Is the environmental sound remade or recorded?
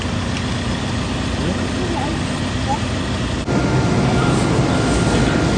recorded